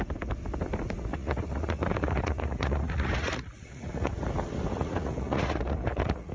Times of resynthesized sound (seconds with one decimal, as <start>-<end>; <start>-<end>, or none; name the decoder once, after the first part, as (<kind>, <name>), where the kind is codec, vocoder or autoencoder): 1.1-4.1 (vocoder, Vocos); 4.7-6.3